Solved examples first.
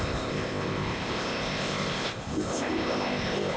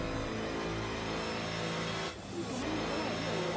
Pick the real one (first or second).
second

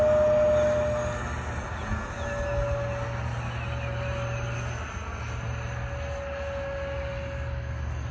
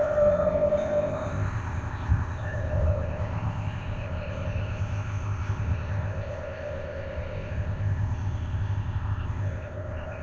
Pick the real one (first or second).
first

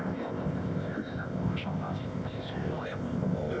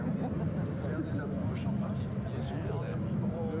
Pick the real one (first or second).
second